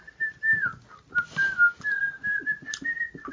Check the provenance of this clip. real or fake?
real